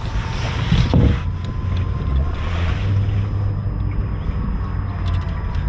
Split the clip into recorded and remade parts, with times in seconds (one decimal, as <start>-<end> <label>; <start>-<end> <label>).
0.0-2.1 recorded; 2.1-2.7 remade; 2.7-5.7 recorded

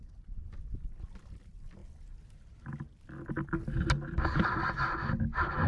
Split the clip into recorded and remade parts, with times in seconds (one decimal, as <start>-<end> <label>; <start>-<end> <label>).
0.0-5.7 recorded

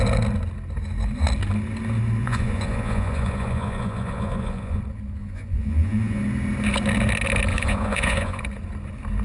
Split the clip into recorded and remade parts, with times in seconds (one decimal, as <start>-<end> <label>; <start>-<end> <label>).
0.0-2.2 recorded; 2.2-4.8 remade; 4.8-5.2 recorded; 5.2-6.2 remade; 6.2-7.5 recorded; 7.5-8.4 remade; 8.4-9.2 recorded

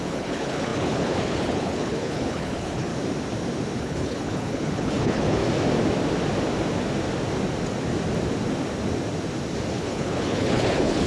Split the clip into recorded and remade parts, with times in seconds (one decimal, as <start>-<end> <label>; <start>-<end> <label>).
0.0-2.9 remade; 2.9-3.8 recorded; 3.8-5.4 remade; 5.4-9.7 recorded; 9.7-11.1 remade

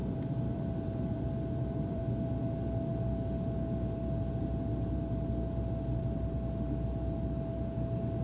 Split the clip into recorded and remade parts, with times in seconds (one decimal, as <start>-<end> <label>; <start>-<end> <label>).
0.0-2.0 remade; 2.0-8.2 recorded

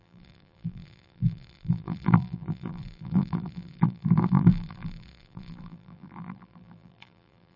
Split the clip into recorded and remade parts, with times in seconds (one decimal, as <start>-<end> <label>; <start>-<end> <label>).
0.0-7.6 remade